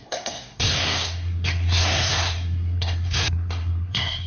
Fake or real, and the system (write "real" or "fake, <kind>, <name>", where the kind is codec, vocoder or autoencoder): fake, codec, SNAC